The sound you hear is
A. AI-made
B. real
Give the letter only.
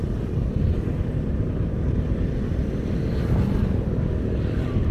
B